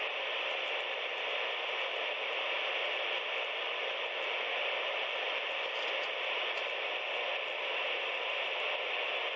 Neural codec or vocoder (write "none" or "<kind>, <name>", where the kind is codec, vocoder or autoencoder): none